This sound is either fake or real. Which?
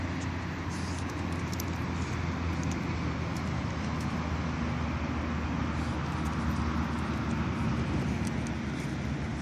real